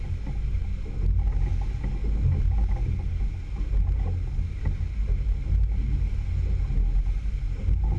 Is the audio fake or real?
real